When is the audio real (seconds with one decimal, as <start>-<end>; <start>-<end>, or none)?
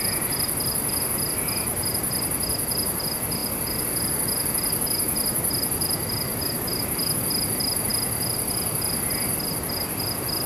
0.0-10.5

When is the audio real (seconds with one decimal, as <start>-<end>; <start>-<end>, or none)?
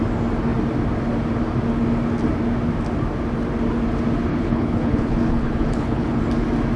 0.0-4.3; 6.2-6.8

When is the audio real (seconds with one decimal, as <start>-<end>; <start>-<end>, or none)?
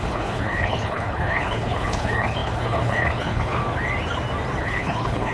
3.6-4.6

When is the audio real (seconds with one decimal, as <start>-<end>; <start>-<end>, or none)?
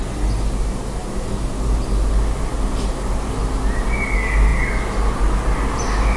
0.0-6.2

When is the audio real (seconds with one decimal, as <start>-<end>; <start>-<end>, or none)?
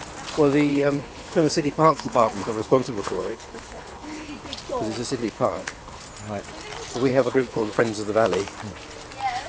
0.0-0.7; 4.3-5.2; 6.0-7.1; 7.8-9.5